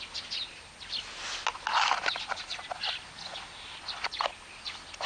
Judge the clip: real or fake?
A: real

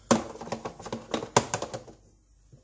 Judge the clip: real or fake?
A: real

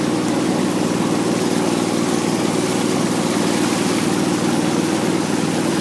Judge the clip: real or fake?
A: real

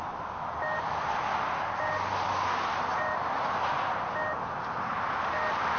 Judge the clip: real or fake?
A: real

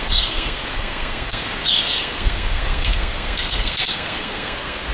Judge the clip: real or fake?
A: fake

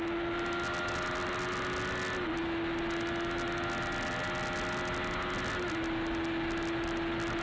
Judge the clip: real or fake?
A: real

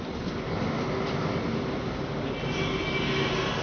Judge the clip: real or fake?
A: real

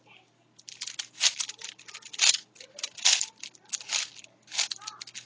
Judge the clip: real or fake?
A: real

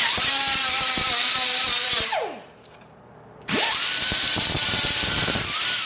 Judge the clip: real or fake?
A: fake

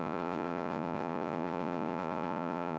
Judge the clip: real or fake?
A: fake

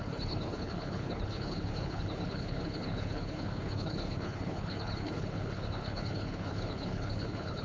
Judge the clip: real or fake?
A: fake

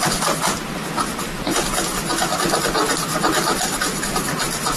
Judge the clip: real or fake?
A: real